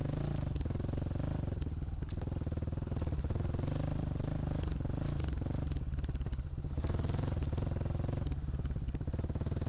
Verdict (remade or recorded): recorded